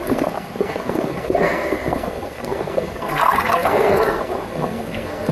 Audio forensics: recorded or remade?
remade